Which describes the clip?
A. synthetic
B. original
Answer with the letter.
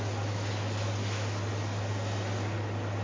B